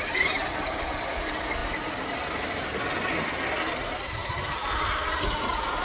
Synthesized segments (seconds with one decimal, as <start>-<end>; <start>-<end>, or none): none